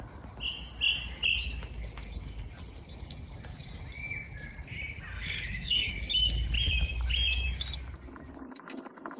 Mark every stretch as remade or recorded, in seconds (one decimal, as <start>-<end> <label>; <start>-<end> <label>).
0.0-5.1 recorded; 5.1-5.9 remade; 5.9-9.2 recorded